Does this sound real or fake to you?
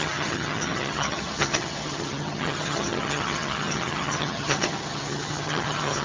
fake